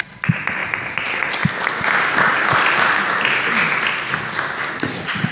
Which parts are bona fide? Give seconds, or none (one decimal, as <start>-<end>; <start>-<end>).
0.0-5.3